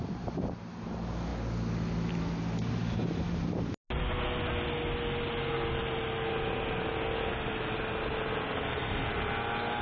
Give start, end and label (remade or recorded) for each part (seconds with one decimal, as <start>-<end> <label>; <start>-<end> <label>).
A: 0.0-9.8 recorded